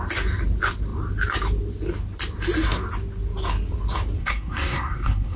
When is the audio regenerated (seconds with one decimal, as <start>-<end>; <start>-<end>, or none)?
4.2-5.4